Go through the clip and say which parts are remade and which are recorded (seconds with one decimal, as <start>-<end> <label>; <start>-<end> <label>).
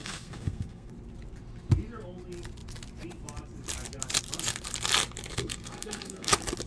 0.0-0.9 remade; 0.9-5.3 recorded; 5.3-6.3 remade; 6.3-6.7 recorded